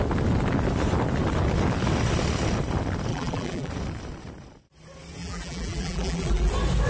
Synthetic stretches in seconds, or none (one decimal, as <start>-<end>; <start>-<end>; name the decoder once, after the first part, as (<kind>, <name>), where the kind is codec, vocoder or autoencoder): 3.1-3.7 (vocoder, BigVGAN v2); 5.2-6.5